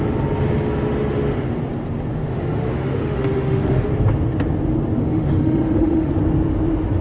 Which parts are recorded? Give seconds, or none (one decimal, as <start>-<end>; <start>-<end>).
0.0-2.1; 3.9-5.0; 6.1-7.0